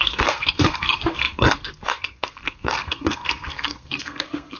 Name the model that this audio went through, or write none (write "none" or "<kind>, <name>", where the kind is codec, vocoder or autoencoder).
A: codec, SNAC